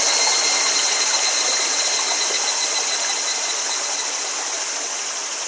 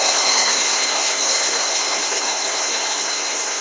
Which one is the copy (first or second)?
second